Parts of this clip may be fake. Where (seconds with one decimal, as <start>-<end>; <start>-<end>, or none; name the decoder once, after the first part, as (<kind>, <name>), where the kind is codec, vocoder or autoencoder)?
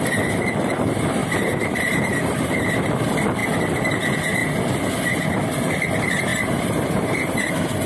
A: 1.2-2.6 (vocoder, BigVGAN v2); 6.3-7.5